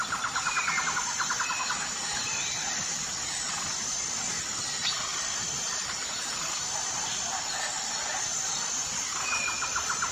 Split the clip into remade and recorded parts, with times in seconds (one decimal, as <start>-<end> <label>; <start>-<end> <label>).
0.0-10.1 recorded